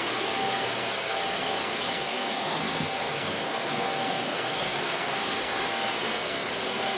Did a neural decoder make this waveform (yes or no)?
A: yes